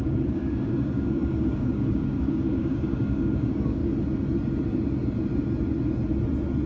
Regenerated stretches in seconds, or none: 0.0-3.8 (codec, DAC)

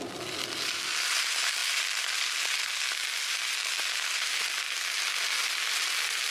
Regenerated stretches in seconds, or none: none

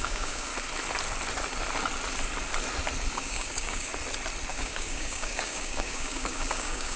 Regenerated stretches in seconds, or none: 0.0-0.5 (codec, DAC); 3.1-3.9; 4.5-7.0

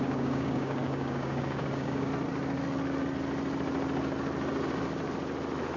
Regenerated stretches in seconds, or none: 0.0-2.1 (codec, DAC)

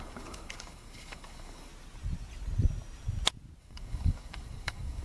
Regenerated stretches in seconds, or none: 0.0-1.7 (codec, DAC); 3.6-5.0

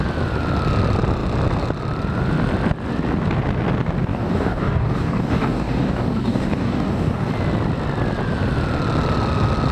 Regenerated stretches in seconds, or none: 4.1-7.3 (codec, DAC)